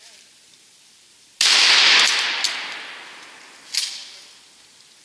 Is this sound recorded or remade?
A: recorded